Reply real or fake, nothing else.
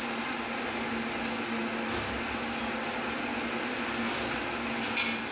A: real